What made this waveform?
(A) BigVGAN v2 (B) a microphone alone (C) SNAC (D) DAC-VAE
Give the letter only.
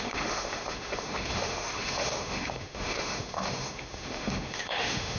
D